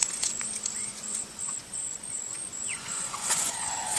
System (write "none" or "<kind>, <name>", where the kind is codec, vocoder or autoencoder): vocoder, Vocos